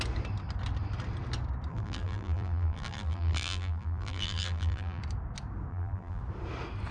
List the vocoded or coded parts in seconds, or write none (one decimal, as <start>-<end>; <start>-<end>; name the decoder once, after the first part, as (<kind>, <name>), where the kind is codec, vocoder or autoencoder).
1.7-5.0 (vocoder, BigVGAN v2); 5.7-6.2